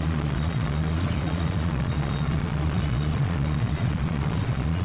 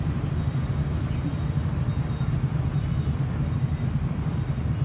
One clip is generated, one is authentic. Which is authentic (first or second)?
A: second